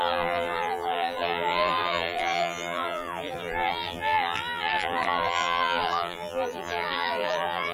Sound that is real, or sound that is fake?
fake